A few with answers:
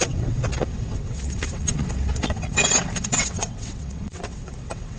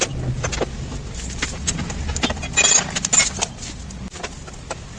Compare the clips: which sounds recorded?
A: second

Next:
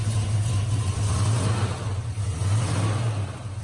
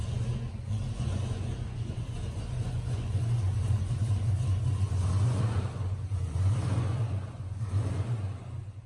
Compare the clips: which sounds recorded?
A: first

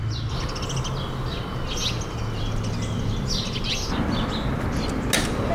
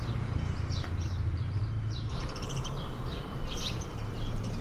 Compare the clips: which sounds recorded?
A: first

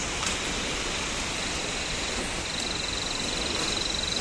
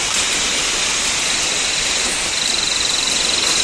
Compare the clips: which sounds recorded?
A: first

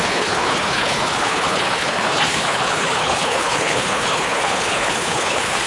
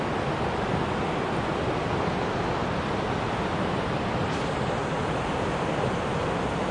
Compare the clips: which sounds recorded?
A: second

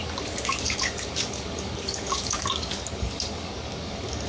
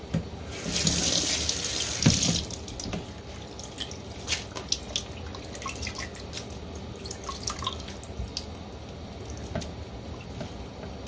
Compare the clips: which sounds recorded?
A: second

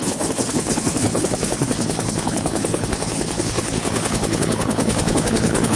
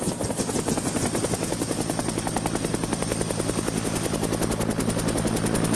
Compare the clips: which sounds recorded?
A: second